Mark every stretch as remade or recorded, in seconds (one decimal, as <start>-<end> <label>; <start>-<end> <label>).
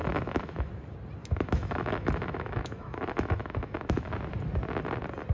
0.0-0.7 remade; 0.7-1.2 recorded; 1.2-4.1 remade; 4.1-5.3 recorded